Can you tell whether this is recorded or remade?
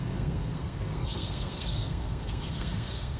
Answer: remade